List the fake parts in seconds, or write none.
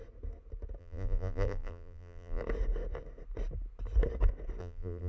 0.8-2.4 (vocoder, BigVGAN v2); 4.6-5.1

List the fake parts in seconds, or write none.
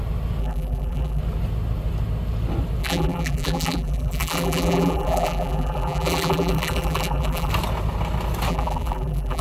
0.4-1.2 (vocoder, BigVGAN v2); 2.8-7.5; 8.5-9.4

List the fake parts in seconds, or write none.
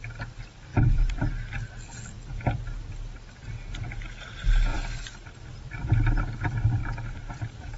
0.7-1.2 (vocoder, BigVGAN v2); 4.7-6.2; 6.8-7.3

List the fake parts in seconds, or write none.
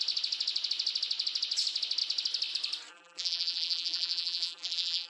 2.9-5.1 (vocoder, BigVGAN v2)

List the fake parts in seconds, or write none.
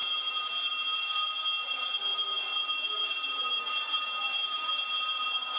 0.0-1.0 (vocoder, BigVGAN v2); 3.0-4.9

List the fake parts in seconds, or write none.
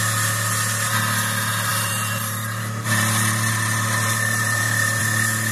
1.7-5.0 (vocoder, BigVGAN v2)